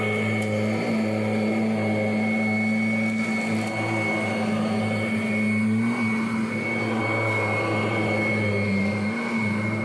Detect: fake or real real